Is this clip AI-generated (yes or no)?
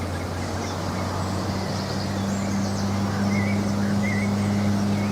no